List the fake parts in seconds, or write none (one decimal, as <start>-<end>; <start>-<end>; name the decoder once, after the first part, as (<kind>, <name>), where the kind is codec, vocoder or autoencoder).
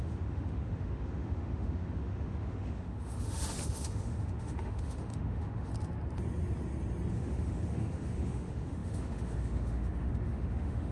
0.0-5.7 (autoencoder, DAC-VAE); 7.1-10.9